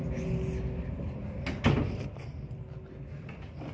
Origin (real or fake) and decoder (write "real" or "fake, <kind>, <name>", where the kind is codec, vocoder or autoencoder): real